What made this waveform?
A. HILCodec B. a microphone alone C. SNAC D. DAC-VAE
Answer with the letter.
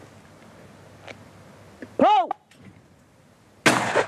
B